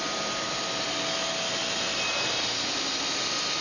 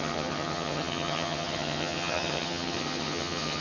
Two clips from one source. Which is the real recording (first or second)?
first